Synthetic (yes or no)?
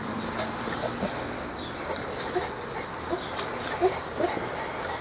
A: no